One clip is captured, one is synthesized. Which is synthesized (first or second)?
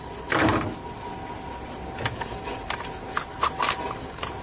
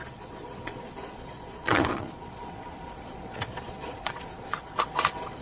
second